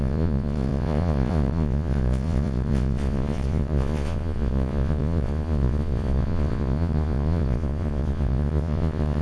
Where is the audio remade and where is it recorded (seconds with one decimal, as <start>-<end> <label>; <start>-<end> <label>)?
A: 0.0-9.2 remade